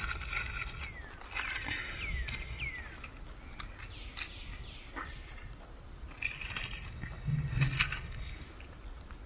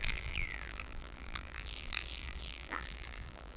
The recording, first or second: first